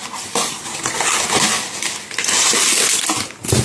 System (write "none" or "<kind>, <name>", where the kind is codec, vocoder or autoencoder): none